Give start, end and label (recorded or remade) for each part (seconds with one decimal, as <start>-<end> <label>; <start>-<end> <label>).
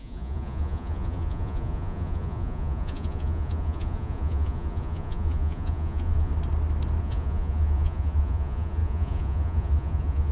0.0-6.3 remade; 6.3-7.0 recorded; 7.0-10.3 remade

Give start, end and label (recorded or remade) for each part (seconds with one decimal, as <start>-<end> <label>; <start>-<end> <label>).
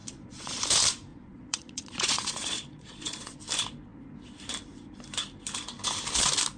0.0-0.6 remade; 0.6-1.1 recorded; 1.1-3.4 remade; 3.4-6.6 recorded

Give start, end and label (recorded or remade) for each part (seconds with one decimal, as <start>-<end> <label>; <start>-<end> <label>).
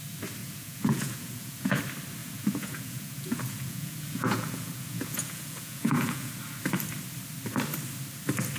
0.0-0.4 recorded; 0.4-1.8 remade; 1.8-2.2 recorded; 2.2-6.3 remade; 6.3-8.6 recorded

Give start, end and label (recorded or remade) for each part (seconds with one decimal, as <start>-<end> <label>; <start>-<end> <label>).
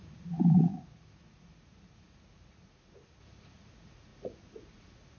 0.0-5.2 remade